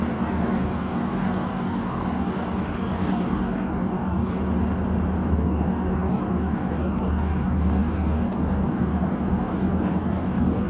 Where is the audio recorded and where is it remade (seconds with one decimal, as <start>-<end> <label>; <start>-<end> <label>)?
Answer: 0.0-4.4 remade; 4.4-5.3 recorded; 5.3-10.7 remade